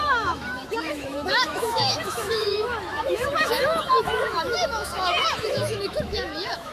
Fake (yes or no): yes